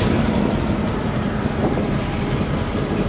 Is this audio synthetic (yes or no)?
yes